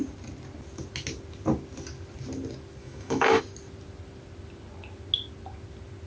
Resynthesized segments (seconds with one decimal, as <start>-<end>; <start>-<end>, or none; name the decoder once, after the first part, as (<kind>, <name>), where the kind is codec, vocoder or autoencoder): 2.8-3.4 (autoencoder, DAC-VAE)

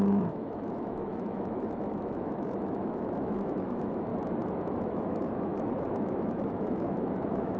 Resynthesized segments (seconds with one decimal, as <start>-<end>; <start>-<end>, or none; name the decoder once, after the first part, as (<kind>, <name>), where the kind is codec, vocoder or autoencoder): 0.0-4.1 (autoencoder, DAC-VAE); 4.8-7.6